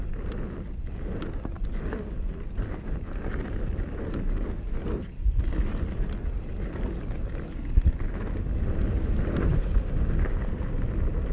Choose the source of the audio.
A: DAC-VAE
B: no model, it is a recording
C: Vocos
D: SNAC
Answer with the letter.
B